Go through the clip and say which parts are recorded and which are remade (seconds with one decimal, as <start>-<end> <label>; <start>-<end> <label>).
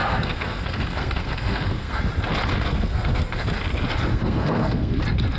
0.0-2.0 remade; 2.0-2.5 recorded; 2.5-3.4 remade; 3.4-4.1 recorded; 4.1-5.0 remade; 5.0-5.4 recorded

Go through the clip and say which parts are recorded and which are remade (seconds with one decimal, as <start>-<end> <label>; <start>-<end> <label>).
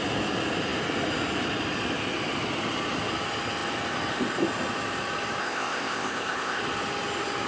0.0-5.4 recorded; 5.4-6.6 remade; 6.6-7.5 recorded